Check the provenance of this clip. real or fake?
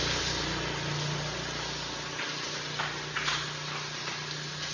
real